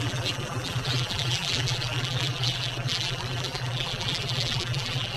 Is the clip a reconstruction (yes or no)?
yes